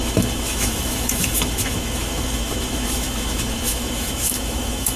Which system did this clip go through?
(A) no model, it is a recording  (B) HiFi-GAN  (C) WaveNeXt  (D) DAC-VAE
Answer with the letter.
D